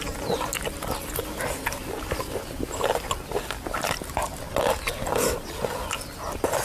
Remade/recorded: recorded